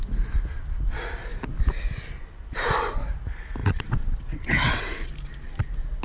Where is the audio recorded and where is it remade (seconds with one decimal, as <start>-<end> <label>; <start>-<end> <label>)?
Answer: 0.0-3.6 recorded; 3.6-5.1 remade; 5.1-6.0 recorded